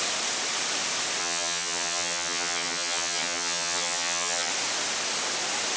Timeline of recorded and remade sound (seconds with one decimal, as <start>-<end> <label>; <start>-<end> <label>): 0.0-1.2 recorded; 1.2-4.5 remade; 4.5-5.8 recorded